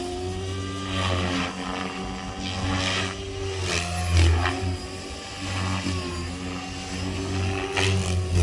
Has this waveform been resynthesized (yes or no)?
no